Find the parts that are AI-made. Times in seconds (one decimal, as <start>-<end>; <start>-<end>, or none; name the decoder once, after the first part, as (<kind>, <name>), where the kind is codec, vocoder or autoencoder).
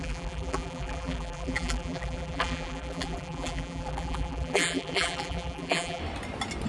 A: 0.0-6.0 (vocoder, BigVGAN v2)